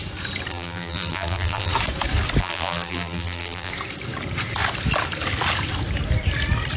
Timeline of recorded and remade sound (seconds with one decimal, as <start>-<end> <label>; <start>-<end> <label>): 0.0-0.5 recorded; 0.5-1.7 remade; 1.7-2.4 recorded; 2.4-3.7 remade; 3.7-6.8 recorded